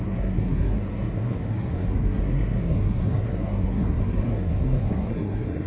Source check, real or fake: fake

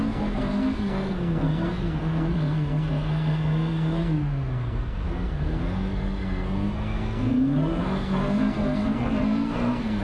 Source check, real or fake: fake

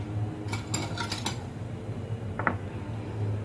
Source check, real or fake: real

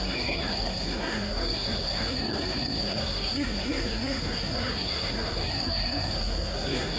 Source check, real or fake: fake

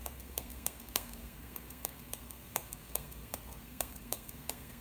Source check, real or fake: fake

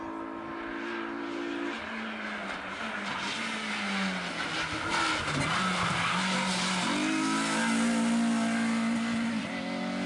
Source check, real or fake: real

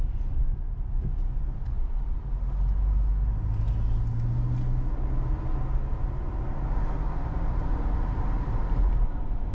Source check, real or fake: real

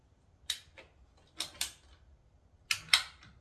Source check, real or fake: real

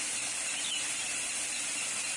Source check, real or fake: real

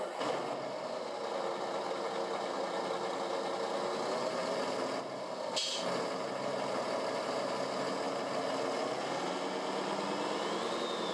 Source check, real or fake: real